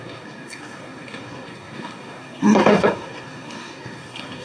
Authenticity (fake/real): fake